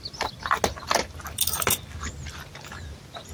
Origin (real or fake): real